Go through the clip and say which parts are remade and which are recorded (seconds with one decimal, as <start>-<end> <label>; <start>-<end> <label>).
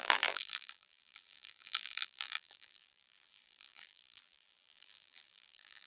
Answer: 0.0-5.9 remade